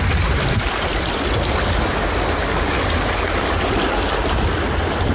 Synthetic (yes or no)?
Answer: no